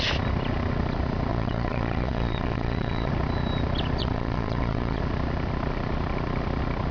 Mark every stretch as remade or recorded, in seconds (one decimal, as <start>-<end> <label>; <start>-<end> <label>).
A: 0.0-1.3 recorded; 1.3-3.1 remade; 3.1-4.0 recorded; 4.0-5.0 remade; 5.0-6.9 recorded